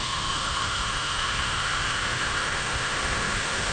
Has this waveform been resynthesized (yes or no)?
yes